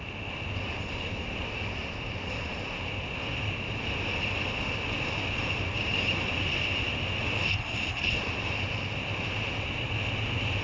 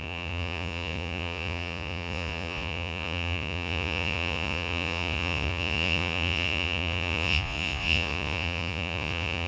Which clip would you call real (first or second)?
first